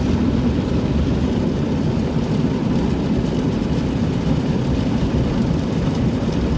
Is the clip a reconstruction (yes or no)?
yes